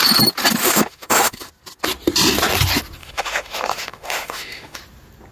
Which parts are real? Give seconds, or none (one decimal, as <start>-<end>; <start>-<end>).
0.0-0.6; 1.5-3.0; 4.8-5.3